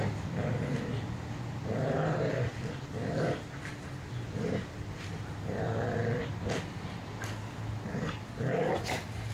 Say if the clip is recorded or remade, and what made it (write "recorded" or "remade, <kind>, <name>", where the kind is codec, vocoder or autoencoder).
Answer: recorded